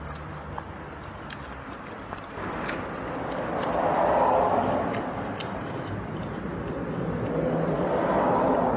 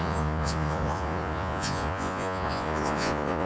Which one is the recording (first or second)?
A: first